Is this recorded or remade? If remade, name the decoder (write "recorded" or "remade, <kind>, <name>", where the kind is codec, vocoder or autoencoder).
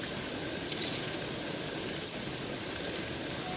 recorded